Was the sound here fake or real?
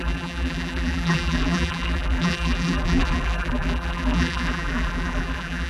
fake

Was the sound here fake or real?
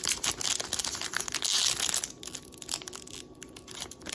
real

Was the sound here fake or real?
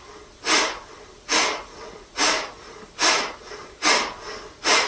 fake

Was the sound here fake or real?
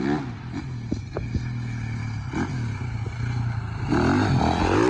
real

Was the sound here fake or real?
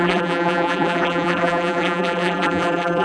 fake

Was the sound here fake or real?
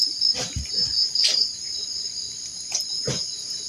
fake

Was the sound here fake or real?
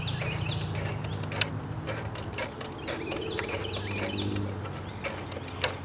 real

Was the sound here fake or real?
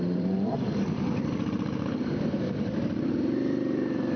fake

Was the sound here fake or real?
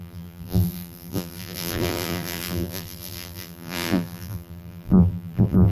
fake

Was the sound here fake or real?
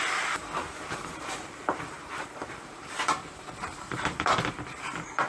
fake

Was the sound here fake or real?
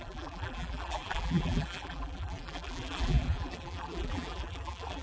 fake